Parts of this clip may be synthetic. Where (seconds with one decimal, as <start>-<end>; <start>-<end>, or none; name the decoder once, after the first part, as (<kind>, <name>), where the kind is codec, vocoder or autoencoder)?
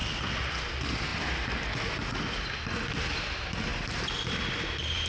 none